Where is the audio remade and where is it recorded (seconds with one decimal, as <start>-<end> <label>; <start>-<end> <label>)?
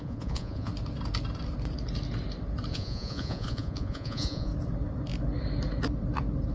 0.0-0.7 remade; 0.7-2.7 recorded; 2.7-4.5 remade; 4.5-6.5 recorded